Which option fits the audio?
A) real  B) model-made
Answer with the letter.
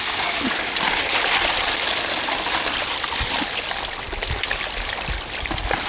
A